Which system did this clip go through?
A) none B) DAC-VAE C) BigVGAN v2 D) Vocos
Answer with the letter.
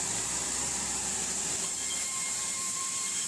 C